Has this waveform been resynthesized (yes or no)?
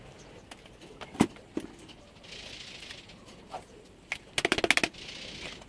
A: no